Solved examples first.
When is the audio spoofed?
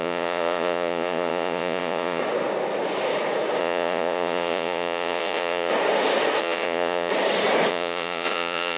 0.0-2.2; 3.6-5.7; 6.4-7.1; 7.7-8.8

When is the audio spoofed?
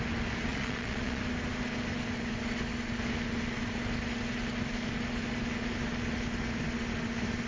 0.5-1.2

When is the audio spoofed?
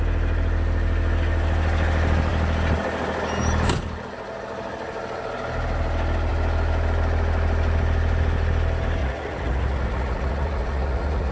9.0-11.3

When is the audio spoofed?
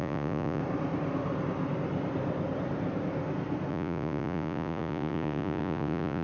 0.0-0.6; 3.7-6.2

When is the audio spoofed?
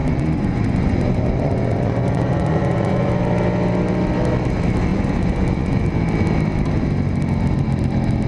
0.0-3.1; 4.9-5.9